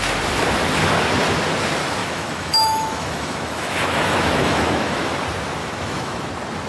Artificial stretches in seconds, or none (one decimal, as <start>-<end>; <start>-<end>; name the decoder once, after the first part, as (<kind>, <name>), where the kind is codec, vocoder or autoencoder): 2.0-5.1 (autoencoder, DAC-VAE); 5.6-6.3